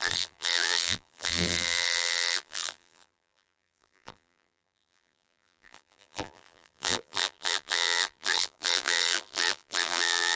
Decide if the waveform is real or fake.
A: fake